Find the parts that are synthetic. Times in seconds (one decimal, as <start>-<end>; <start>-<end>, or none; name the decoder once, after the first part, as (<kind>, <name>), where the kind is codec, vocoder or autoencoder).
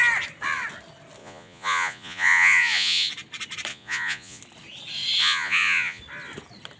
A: 1.2-3.1 (vocoder, Vocos); 3.7-4.4; 5.2-6.0